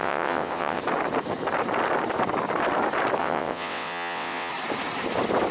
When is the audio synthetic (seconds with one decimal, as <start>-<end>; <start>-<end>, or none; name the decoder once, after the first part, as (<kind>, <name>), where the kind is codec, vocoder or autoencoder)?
0.0-0.8 (vocoder, WaveNeXt); 3.2-4.5